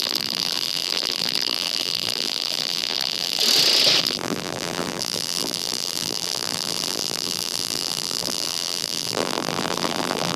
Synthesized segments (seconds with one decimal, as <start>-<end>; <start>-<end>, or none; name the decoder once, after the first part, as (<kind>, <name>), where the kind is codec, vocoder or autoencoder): 0.0-3.4 (vocoder, BigVGAN v2); 4.0-10.4